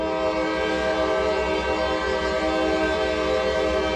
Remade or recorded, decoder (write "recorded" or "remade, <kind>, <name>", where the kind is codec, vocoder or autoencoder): recorded